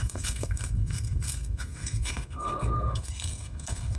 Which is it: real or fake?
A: fake